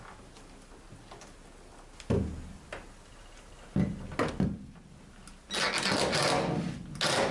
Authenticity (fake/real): real